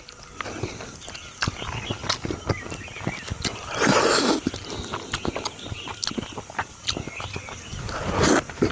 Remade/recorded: recorded